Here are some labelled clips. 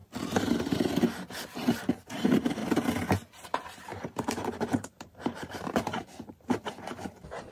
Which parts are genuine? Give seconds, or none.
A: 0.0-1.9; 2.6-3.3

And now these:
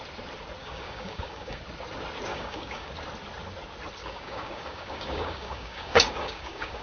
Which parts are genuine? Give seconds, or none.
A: 0.0-0.6; 1.6-2.3; 2.9-4.0

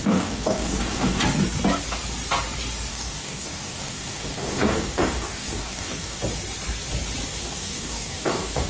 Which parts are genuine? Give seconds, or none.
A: 1.2-2.9; 6.2-7.4